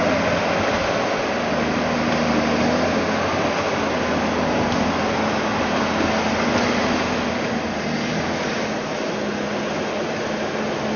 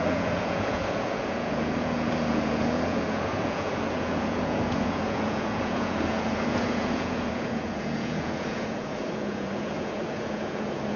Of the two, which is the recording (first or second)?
first